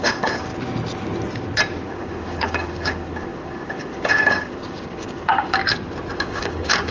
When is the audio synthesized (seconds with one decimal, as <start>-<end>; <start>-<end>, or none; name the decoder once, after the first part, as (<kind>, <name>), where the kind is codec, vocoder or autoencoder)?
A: 0.0-0.5 (codec, DAC); 1.9-5.6; 6.2-6.9